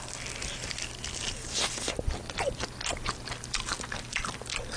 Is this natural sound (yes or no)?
yes